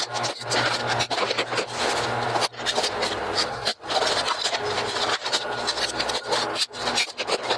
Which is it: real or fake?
real